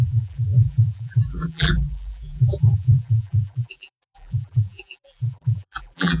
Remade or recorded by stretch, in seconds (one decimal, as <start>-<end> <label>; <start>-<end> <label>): 0.0-6.2 remade